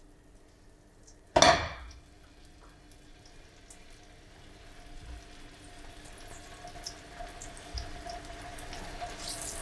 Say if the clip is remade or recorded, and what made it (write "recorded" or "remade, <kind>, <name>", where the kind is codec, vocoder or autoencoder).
recorded